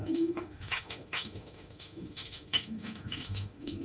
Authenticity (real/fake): fake